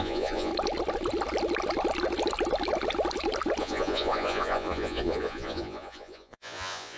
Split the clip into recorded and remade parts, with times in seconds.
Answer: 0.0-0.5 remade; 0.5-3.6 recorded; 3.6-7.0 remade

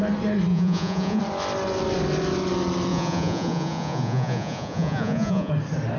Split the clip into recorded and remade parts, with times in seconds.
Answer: 0.0-0.5 recorded; 0.5-1.2 remade; 1.2-2.9 recorded; 2.9-5.5 remade; 5.5-6.0 recorded